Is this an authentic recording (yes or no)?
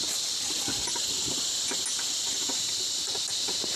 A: yes